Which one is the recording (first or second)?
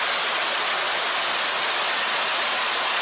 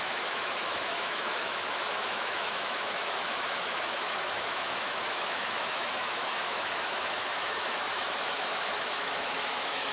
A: first